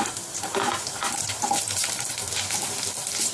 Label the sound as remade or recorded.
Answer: recorded